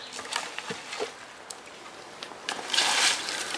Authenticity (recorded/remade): recorded